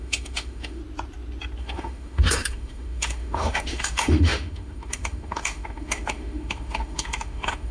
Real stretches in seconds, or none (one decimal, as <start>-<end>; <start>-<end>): 0.8-1.6